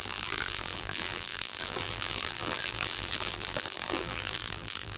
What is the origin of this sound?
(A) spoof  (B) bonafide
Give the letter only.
A